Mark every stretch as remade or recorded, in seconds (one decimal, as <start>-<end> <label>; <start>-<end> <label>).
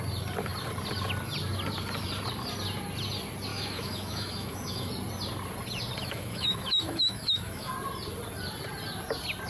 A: 0.0-3.5 recorded; 3.5-4.9 remade; 4.9-6.0 recorded; 6.0-7.7 remade; 7.7-9.5 recorded